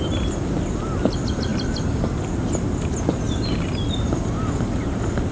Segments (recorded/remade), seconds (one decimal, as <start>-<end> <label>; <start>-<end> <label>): 0.0-5.3 recorded